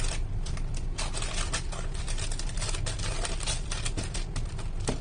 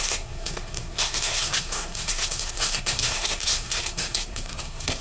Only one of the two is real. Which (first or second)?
first